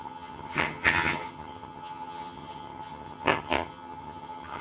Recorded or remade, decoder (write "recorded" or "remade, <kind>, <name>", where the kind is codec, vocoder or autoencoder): remade, vocoder, HiFi-GAN